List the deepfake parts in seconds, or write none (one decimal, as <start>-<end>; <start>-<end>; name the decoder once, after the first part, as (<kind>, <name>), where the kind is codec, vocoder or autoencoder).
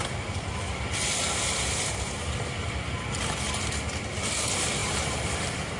4.8-5.8 (vocoder, BigVGAN v2)